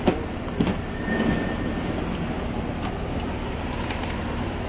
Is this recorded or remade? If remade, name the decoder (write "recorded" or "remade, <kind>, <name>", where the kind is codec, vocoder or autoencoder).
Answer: recorded